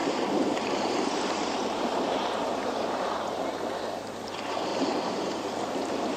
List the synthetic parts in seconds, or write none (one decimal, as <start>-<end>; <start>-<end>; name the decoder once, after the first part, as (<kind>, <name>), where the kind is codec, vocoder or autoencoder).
0.0-3.7 (vocoder, BigVGAN v2); 4.7-5.3